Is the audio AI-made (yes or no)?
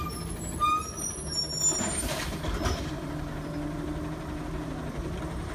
no